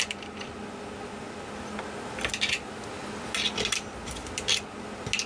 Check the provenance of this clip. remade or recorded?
recorded